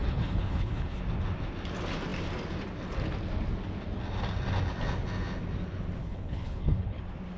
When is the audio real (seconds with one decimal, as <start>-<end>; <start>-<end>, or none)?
1.0-6.0; 7.0-7.4